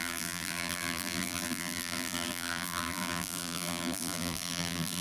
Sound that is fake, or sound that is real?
fake